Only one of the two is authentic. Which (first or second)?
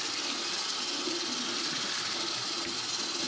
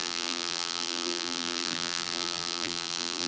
first